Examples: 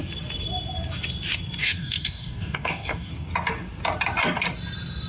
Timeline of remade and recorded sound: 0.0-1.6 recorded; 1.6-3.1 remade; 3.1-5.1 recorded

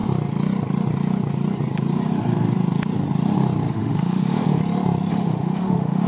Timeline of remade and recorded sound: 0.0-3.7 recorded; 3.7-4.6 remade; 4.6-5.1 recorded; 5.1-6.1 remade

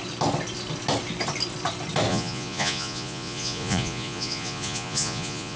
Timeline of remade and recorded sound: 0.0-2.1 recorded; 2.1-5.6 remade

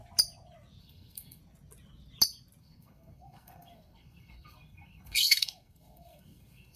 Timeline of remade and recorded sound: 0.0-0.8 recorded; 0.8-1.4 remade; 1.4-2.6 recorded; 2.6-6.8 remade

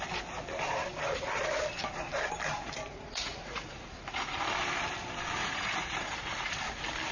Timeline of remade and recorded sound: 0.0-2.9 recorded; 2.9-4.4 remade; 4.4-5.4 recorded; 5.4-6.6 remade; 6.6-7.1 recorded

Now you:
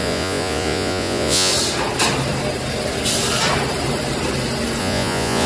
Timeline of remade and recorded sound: 0.0-1.5 remade; 1.5-4.8 recorded; 4.8-5.5 remade

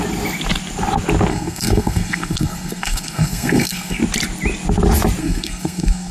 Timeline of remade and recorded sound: 0.0-1.3 recorded; 1.3-4.0 remade; 4.0-5.2 recorded; 5.2-6.1 remade

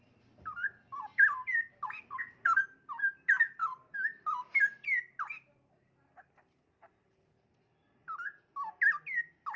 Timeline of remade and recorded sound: 0.0-3.6 recorded; 3.6-4.6 remade; 4.6-9.6 recorded